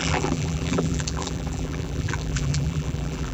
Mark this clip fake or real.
fake